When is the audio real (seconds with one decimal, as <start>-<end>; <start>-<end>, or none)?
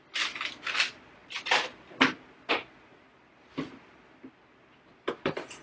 0.0-5.6